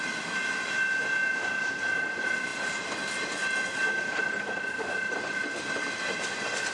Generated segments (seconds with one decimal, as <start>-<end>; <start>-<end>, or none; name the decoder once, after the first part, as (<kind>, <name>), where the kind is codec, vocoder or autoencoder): 0.0-0.4 (vocoder, BigVGAN v2); 1.0-2.5; 4.2-6.7